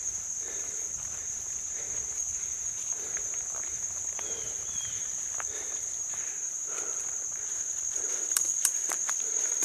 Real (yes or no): no